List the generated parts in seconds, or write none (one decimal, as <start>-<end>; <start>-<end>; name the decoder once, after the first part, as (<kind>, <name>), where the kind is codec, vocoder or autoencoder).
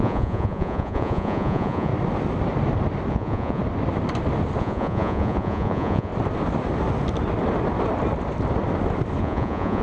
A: 0.0-1.9 (vocoder, Vocos); 3.1-3.6; 4.6-6.1; 9.2-9.8